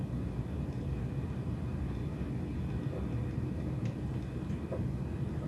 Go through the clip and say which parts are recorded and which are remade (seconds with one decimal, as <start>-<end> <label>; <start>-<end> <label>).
0.0-5.5 recorded